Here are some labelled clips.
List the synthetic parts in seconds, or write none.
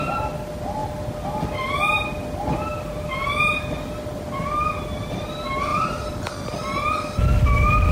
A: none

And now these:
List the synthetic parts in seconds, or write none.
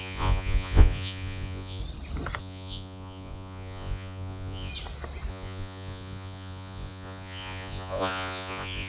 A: 0.0-1.8 (vocoder, Vocos); 2.4-4.7; 5.3-8.9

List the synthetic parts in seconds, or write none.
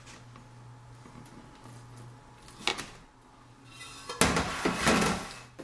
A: none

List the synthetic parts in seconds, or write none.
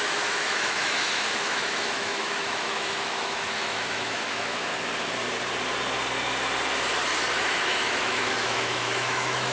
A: 0.0-4.7 (autoencoder, DAC-VAE); 7.4-9.5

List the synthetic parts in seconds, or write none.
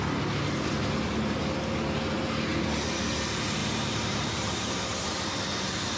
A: 3.6-5.2 (vocoder, BigVGAN v2)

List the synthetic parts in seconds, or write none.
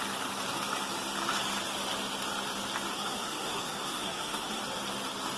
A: 2.9-4.6 (codec, SNAC)